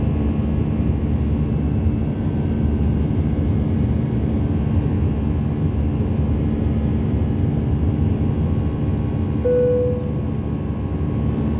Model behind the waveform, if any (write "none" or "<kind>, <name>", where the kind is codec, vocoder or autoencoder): none